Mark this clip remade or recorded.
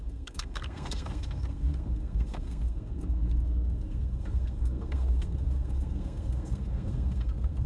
remade